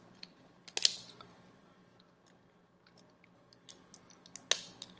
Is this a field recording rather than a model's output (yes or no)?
yes